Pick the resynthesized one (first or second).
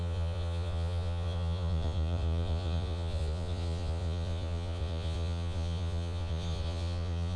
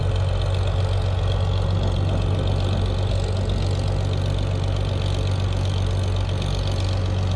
first